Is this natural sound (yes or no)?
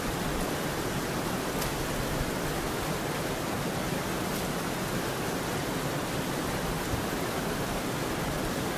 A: yes